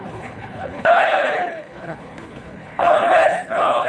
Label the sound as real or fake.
fake